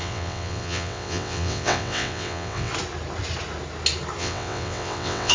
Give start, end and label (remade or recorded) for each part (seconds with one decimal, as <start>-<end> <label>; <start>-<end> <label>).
0.0-2.7 remade; 2.7-4.2 recorded; 4.2-5.3 remade